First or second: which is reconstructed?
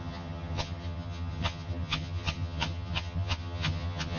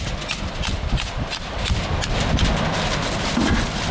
first